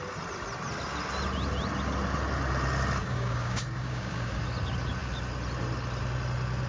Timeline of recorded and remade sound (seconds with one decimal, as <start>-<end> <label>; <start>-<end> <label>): 0.0-3.0 recorded; 3.0-4.4 remade; 4.4-6.7 recorded